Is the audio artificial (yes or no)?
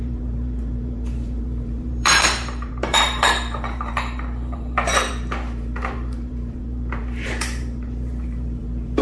yes